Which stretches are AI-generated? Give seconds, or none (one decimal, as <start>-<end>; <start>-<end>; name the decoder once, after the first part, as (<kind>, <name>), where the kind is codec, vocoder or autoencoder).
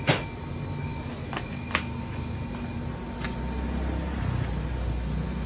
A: none